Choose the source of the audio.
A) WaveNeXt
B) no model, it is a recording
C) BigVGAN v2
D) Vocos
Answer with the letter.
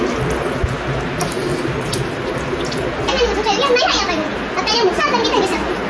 B